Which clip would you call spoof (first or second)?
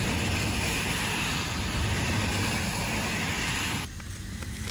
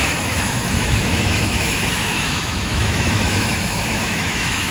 second